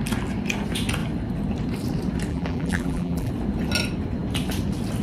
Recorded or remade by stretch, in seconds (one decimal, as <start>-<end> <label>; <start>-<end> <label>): 0.0-2.3 recorded; 2.3-3.3 remade; 3.3-5.0 recorded